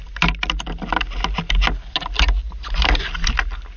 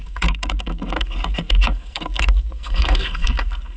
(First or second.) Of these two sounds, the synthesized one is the second